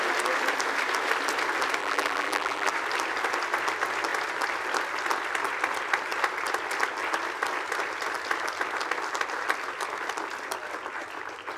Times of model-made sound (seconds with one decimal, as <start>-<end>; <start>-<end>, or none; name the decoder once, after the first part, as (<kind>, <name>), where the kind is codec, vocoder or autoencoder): 1.8-2.7 (vocoder, BigVGAN v2)